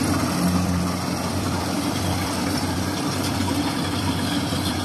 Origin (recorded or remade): remade